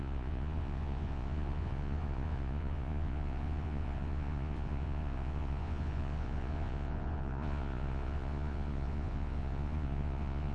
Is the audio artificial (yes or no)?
yes